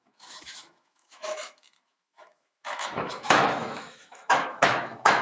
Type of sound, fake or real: fake